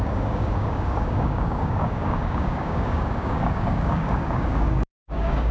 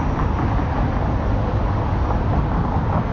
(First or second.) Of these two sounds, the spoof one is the first